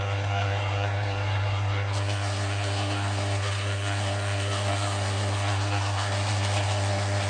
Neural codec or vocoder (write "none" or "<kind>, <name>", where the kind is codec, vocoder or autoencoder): codec, SNAC